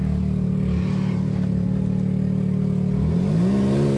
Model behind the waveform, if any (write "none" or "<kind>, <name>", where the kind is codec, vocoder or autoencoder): none